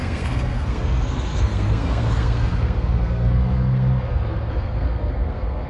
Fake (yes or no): yes